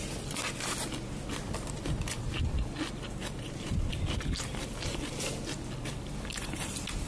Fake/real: real